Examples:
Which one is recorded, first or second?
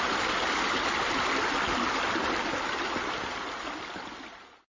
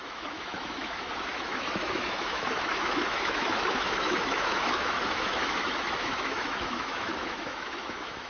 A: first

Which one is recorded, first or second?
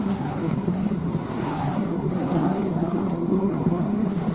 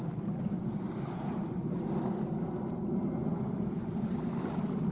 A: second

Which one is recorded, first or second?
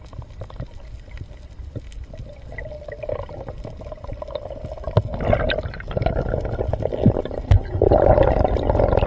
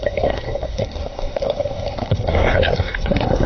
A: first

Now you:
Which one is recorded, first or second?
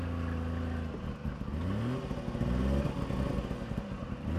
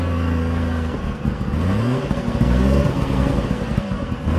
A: first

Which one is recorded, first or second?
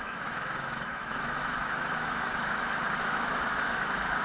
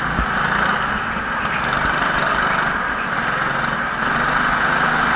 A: second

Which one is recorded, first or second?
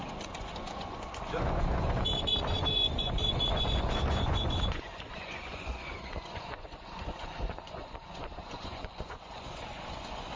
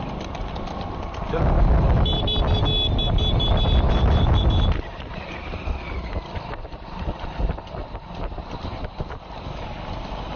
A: second